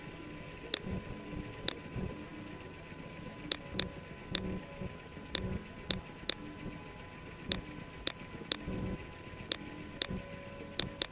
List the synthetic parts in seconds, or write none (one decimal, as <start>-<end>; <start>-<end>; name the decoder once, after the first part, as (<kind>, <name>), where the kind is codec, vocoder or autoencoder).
none